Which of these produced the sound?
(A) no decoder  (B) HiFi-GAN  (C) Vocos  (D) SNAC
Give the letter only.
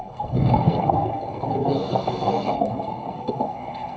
D